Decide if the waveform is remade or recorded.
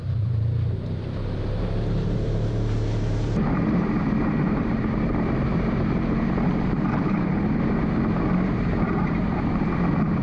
remade